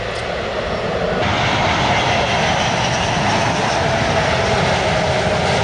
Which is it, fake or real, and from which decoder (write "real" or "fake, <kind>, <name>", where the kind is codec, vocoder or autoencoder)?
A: real